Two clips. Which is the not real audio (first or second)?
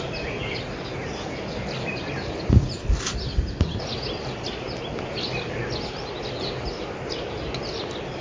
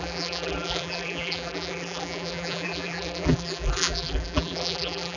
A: second